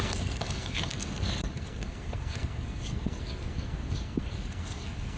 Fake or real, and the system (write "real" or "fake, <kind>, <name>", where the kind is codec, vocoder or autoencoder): fake, codec, SNAC